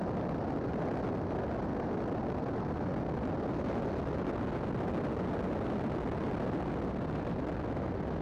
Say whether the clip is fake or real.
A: real